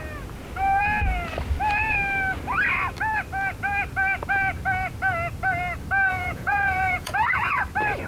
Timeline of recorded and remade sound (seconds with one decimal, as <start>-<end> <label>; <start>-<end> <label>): 0.0-6.1 recorded; 6.1-7.6 remade; 7.6-8.1 recorded